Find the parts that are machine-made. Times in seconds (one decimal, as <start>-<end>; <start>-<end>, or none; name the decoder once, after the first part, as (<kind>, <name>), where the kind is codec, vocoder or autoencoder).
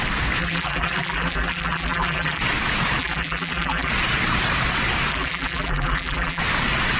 0.4-2.4 (vocoder, BigVGAN v2); 3.0-3.9; 5.1-6.4